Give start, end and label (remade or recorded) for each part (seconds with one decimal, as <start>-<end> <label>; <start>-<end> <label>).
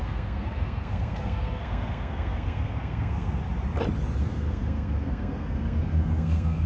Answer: 0.0-3.4 remade; 3.4-4.2 recorded; 4.2-6.7 remade